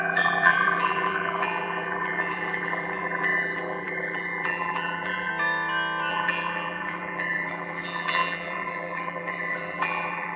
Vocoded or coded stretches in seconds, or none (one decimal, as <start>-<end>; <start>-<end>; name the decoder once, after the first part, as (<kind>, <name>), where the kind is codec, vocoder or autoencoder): 0.0-5.3 (vocoder, BigVGAN v2); 6.1-10.4